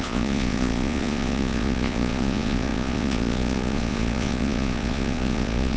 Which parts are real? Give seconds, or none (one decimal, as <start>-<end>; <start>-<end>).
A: none